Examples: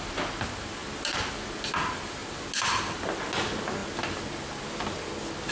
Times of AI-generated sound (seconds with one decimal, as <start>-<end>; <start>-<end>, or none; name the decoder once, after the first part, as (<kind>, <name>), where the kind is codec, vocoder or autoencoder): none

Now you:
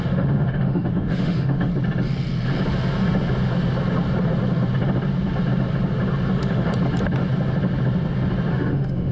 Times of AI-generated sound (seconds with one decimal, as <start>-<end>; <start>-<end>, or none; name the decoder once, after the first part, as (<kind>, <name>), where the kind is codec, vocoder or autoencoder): 0.0-1.7 (autoencoder, DAC-VAE); 6.3-6.7; 8.5-9.1

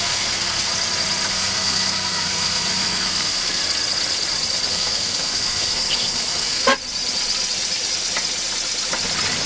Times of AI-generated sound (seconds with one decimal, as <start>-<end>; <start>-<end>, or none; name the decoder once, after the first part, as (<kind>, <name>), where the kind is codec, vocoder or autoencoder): 0.0-0.7 (codec, SNAC); 1.3-3.6; 4.7-6.6